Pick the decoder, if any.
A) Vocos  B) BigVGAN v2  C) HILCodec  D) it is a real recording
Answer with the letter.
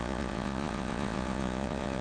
A